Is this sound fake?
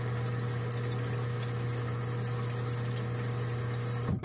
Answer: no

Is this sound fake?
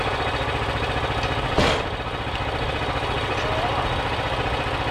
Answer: no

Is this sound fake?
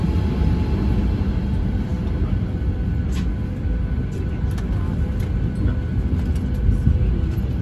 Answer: no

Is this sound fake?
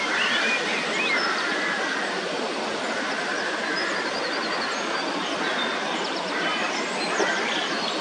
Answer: no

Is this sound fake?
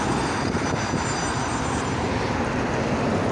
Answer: no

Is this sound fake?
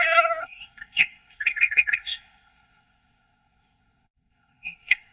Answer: yes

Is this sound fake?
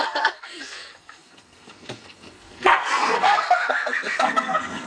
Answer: yes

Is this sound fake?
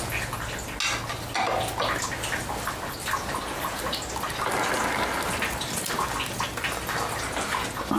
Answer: no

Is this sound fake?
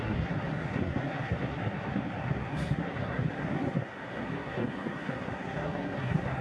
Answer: yes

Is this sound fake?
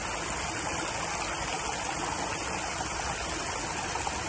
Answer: no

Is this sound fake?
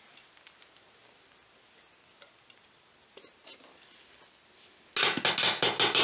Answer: no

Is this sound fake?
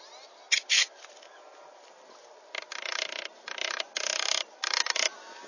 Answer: no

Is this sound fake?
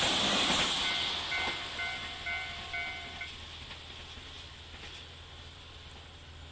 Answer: no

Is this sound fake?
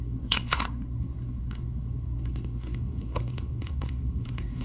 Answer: yes